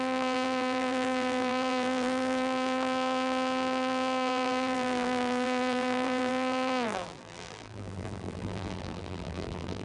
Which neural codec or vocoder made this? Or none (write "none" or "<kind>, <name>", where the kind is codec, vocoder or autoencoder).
vocoder, BigVGAN v2